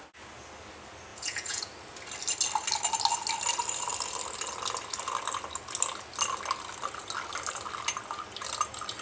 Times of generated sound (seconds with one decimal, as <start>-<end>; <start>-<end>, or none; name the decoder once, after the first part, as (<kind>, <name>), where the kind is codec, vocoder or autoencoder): 1.1-1.7 (vocoder, Vocos)